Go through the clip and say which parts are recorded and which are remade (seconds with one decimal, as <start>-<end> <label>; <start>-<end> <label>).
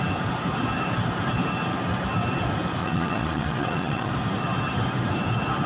0.0-2.8 recorded; 2.8-4.1 remade; 4.1-5.7 recorded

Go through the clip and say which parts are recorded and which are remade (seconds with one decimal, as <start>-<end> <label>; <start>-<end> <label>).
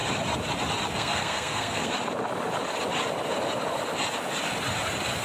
0.0-0.9 recorded; 0.9-1.9 remade; 1.9-5.2 recorded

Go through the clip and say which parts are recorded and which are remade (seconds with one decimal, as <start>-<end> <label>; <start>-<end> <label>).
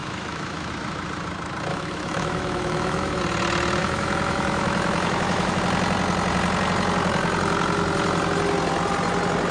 0.0-0.7 remade; 0.7-1.7 recorded; 1.7-3.2 remade; 3.2-3.8 recorded; 3.8-5.6 remade; 5.6-9.5 recorded